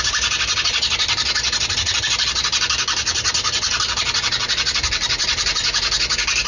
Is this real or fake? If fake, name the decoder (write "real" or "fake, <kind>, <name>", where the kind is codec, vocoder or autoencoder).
real